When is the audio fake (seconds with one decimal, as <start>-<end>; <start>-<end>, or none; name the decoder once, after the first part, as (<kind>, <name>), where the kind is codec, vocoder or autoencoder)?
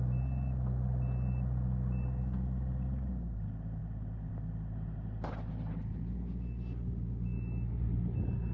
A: none